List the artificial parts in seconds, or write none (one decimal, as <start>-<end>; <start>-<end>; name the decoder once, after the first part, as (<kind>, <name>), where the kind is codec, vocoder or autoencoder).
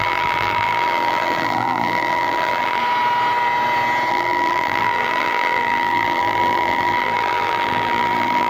0.0-2.8 (vocoder, BigVGAN v2); 4.1-8.5